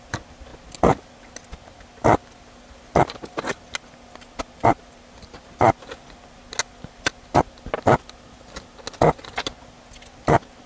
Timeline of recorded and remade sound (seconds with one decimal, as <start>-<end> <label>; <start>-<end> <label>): 0.0-10.7 recorded